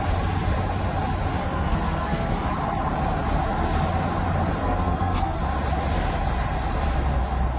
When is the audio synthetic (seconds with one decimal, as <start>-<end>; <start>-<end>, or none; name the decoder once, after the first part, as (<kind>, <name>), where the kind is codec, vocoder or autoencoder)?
1.4-2.5 (codec, SNAC); 4.6-5.4

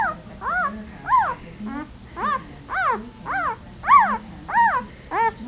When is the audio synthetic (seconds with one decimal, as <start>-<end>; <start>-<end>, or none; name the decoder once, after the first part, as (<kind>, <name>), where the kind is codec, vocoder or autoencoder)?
none

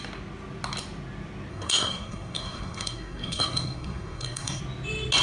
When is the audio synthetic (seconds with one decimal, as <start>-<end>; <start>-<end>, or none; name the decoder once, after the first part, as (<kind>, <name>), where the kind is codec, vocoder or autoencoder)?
1.5-4.6 (codec, SNAC)

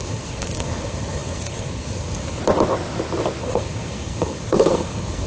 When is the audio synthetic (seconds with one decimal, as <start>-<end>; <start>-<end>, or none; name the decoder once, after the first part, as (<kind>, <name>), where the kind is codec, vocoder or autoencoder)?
0.0-2.4 (codec, SNAC); 3.4-5.3

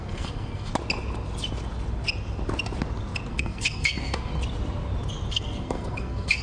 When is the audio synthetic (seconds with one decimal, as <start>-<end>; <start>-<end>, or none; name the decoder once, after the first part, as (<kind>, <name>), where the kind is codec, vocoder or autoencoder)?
0.0-0.7 (codec, SNAC); 3.3-4.3; 5.3-6.4

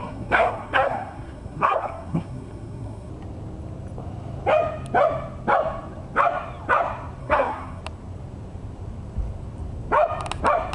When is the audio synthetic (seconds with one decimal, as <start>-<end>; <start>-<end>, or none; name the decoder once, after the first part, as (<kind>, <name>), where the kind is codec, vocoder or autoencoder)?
0.0-3.1 (codec, SNAC); 7.2-7.8

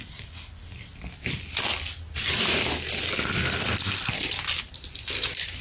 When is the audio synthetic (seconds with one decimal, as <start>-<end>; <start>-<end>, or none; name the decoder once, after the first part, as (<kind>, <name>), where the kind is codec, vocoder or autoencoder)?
0.0-5.6 (vocoder, BigVGAN v2)